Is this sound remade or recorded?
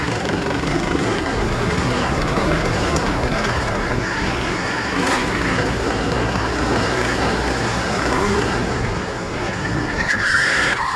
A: remade